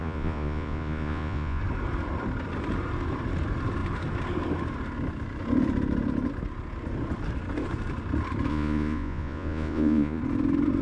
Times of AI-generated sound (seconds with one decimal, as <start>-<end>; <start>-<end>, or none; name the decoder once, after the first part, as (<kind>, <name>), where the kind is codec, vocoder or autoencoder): 0.0-1.6 (vocoder, Vocos); 8.5-10.2